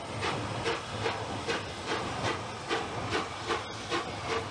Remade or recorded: recorded